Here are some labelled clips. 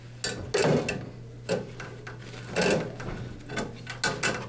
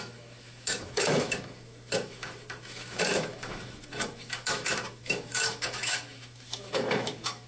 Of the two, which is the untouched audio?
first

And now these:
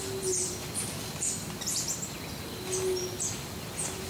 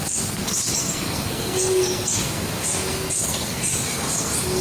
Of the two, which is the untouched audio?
first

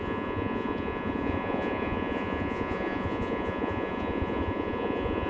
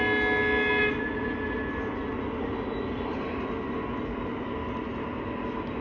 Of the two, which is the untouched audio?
second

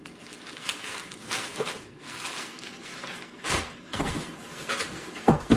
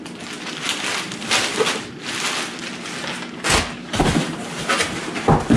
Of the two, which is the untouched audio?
second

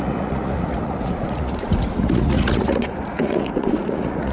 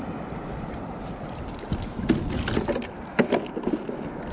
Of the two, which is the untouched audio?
second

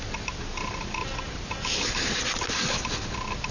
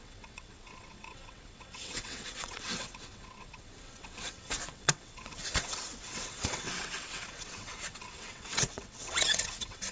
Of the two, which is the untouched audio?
first